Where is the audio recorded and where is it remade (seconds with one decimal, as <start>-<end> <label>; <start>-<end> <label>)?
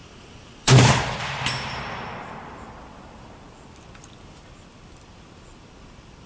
0.0-2.7 remade; 2.7-6.3 recorded